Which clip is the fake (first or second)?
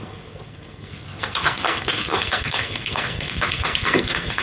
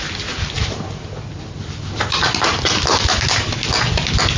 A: first